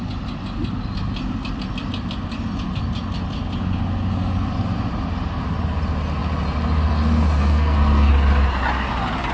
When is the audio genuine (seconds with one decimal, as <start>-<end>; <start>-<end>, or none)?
0.0-7.4; 8.1-9.3